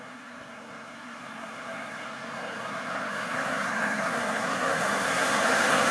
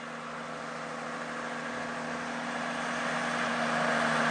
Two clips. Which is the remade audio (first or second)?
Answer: first